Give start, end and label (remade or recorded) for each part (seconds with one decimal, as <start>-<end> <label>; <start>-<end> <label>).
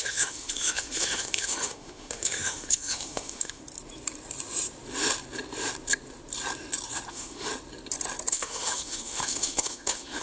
0.0-3.6 remade; 3.6-7.1 recorded; 7.1-7.5 remade; 7.5-8.3 recorded; 8.3-10.2 remade